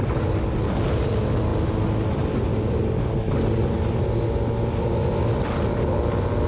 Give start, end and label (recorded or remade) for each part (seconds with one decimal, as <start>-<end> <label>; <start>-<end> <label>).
0.0-6.5 recorded